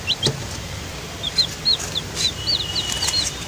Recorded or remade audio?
recorded